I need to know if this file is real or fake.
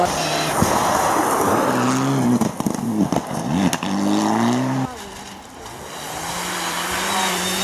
real